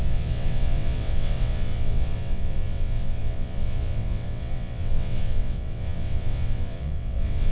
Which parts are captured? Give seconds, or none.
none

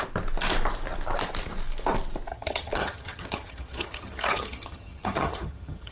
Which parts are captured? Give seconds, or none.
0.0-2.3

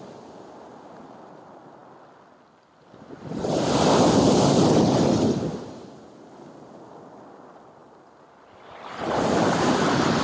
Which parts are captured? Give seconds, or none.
0.0-10.2

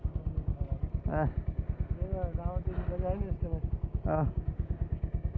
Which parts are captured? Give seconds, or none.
0.5-3.7